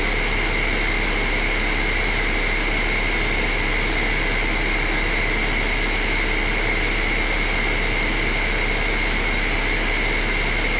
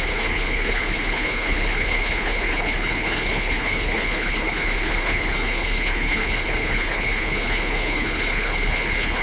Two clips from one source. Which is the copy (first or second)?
second